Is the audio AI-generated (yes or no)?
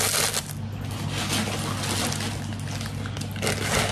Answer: no